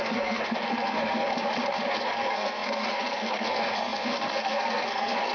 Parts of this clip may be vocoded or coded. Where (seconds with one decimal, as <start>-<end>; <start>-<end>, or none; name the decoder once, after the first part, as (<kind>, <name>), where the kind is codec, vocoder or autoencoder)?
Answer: 0.0-1.3 (codec, SNAC); 1.9-5.3